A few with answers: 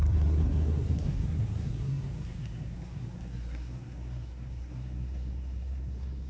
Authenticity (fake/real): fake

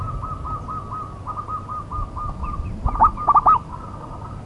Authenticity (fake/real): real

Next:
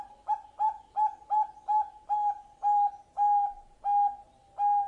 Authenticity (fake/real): real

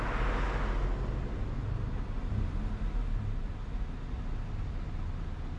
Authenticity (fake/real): real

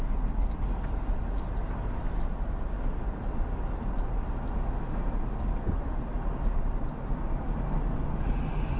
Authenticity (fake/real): real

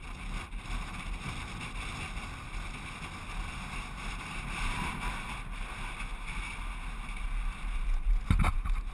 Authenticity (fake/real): real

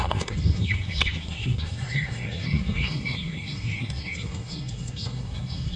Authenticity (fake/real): fake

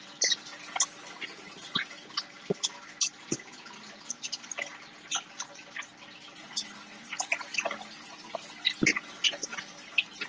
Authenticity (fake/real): real